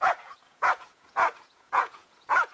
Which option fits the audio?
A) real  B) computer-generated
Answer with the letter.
B